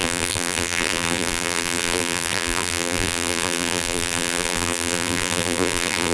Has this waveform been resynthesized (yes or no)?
yes